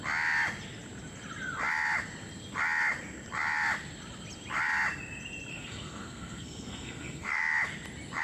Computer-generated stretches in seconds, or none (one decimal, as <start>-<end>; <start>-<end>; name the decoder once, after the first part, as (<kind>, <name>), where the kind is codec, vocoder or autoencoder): 5.5-7.4 (codec, SNAC)